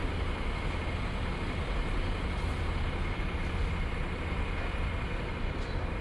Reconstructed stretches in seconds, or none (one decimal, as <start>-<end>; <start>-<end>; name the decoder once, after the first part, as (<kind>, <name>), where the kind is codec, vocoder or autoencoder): none